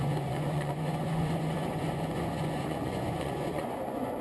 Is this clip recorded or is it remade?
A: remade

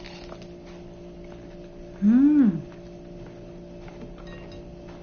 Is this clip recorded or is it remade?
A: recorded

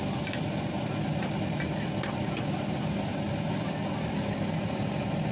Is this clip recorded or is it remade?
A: recorded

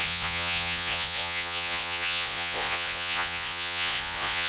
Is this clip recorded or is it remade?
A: remade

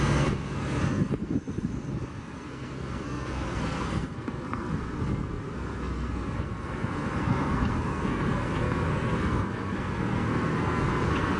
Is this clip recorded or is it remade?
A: remade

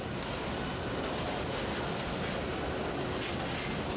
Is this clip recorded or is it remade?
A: recorded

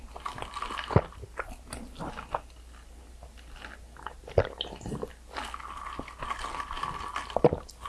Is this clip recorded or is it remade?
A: recorded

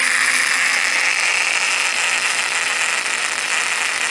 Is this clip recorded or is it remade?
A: recorded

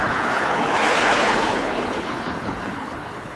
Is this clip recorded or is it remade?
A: remade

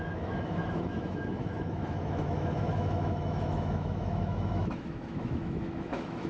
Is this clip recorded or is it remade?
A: remade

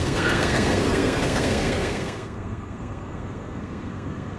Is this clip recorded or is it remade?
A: remade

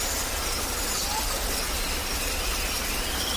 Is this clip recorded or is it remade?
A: remade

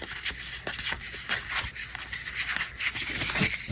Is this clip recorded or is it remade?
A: recorded